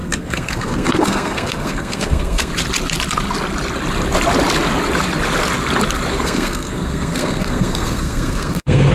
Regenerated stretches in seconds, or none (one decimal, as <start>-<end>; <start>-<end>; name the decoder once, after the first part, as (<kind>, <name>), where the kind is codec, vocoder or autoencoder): 0.0-2.5 (codec, SNAC); 6.1-8.9